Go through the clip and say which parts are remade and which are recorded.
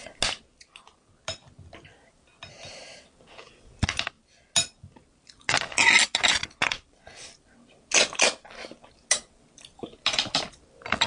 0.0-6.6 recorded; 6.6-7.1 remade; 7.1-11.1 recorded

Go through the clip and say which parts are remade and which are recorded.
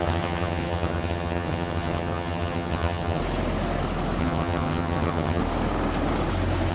0.0-3.2 remade; 3.2-4.2 recorded; 4.2-5.4 remade; 5.4-6.7 recorded